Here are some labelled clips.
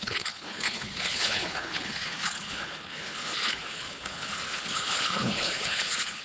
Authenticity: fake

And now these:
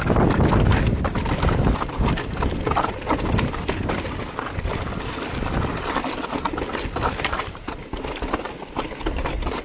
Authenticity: real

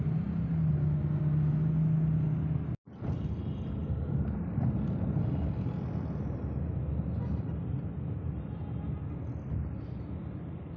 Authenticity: real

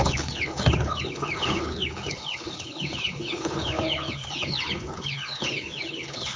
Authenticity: fake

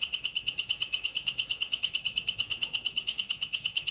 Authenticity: fake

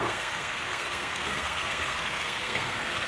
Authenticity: fake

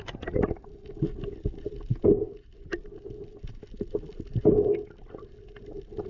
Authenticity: real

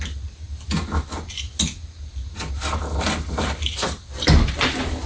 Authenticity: real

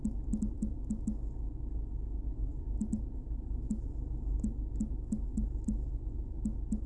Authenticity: real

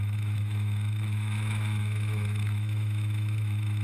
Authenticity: fake